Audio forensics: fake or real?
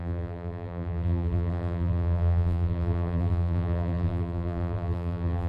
fake